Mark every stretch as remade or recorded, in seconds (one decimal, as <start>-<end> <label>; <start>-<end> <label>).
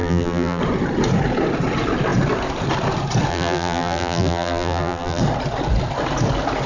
0.0-0.6 remade; 0.6-3.3 recorded; 3.3-5.2 remade; 5.2-6.7 recorded